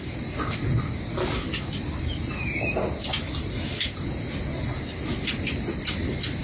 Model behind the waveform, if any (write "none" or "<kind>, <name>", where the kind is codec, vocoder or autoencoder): none